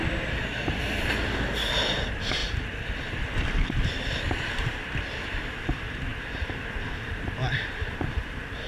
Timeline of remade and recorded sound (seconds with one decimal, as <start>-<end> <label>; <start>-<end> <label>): 0.0-2.4 remade; 2.4-3.1 recorded; 3.1-6.1 remade; 6.1-6.7 recorded; 6.7-8.7 remade